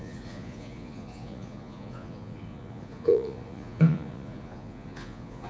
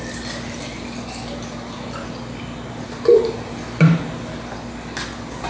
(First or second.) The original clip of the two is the second